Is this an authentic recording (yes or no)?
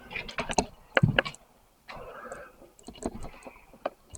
yes